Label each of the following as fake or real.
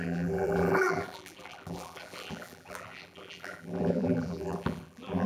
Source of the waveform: fake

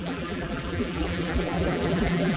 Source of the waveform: fake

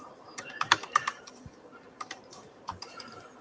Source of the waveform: fake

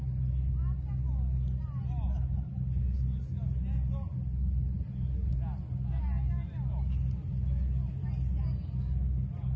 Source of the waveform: real